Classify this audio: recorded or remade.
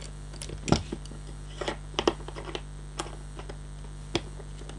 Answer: recorded